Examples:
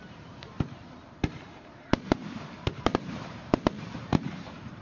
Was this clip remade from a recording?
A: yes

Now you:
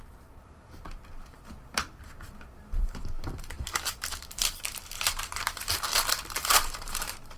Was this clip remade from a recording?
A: yes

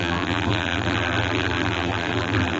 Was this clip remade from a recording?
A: yes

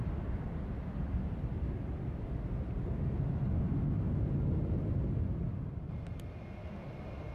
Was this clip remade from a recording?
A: no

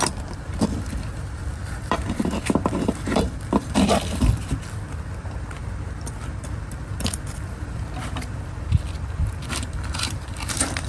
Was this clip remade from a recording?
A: yes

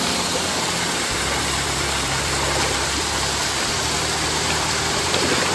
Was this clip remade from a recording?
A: yes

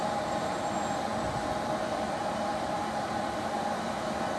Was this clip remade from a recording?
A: yes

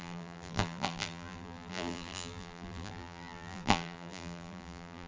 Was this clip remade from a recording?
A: yes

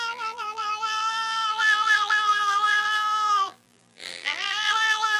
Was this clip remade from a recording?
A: yes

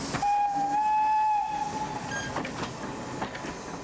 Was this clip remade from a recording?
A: no